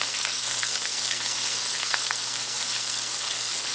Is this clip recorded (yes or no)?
no